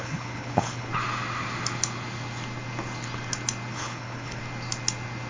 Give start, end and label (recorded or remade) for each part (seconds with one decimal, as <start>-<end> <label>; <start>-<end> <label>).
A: 0.0-0.9 remade; 0.9-3.7 recorded; 3.7-4.4 remade; 4.4-5.3 recorded